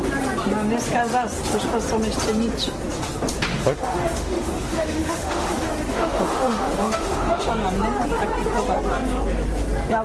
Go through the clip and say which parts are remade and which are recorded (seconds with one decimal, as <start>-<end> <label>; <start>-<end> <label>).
0.0-3.5 recorded; 3.5-5.5 remade; 5.5-5.9 recorded; 5.9-7.5 remade; 7.5-10.0 recorded